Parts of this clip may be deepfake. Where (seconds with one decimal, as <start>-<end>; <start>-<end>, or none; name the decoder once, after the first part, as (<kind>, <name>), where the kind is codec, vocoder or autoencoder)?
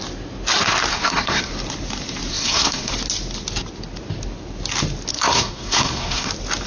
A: 0.9-1.5 (codec, SNAC); 2.3-2.9; 5.1-6.3